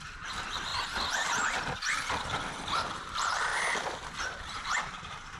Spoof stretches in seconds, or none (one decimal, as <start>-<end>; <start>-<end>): 0.0-0.7; 2.9-3.5; 4.2-5.4